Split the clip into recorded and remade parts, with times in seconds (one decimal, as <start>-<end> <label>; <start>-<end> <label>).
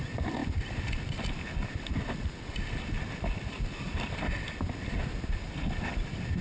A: 0.0-6.4 recorded